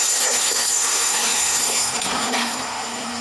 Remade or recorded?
remade